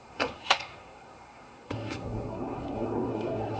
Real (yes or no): no